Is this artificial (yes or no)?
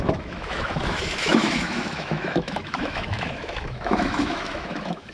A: yes